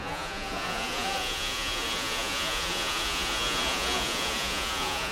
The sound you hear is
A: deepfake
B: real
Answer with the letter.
A